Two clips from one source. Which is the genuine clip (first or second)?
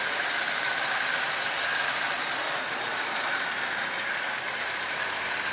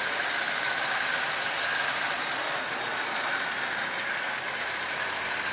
second